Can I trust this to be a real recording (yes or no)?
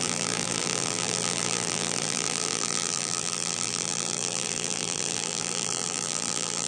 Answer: no